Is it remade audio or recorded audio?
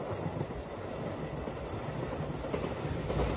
recorded